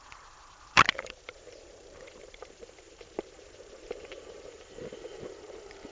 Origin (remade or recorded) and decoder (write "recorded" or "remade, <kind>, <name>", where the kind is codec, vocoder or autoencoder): remade, vocoder, BigVGAN v2